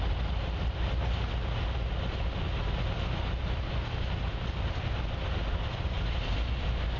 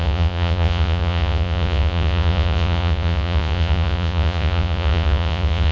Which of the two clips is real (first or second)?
first